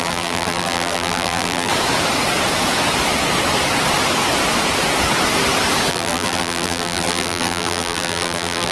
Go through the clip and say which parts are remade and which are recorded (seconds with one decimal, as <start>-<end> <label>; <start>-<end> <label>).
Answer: 0.0-1.7 remade; 1.7-5.9 recorded; 5.9-8.7 remade